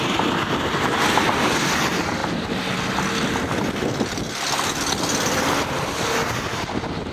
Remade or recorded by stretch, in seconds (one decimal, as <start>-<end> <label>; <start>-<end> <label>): 0.0-7.1 recorded